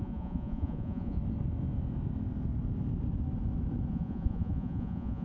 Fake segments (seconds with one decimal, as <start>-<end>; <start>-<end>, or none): 0.0-1.2; 3.9-5.2